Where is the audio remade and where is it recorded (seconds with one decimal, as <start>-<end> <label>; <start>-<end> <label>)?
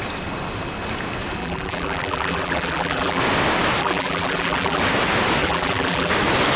0.0-1.4 recorded; 1.4-3.2 remade; 3.2-3.8 recorded; 3.8-4.8 remade; 4.8-5.4 recorded; 5.4-6.1 remade; 6.1-6.6 recorded